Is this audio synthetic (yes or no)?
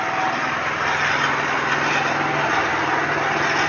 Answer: no